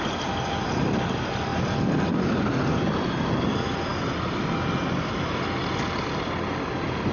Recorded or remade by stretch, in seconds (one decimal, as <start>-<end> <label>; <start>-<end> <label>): 0.0-7.1 recorded